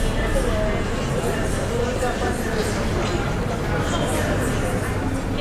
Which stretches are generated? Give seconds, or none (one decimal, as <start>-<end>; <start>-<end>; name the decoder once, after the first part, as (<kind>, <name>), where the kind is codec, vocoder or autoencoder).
none